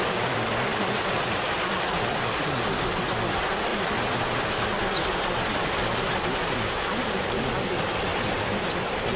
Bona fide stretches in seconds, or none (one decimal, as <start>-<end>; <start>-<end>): 0.0-0.7; 1.4-3.7; 4.4-8.1; 8.6-9.2